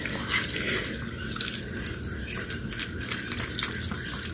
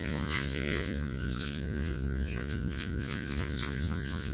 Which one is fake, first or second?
second